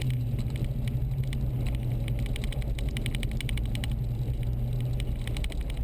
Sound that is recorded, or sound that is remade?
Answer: recorded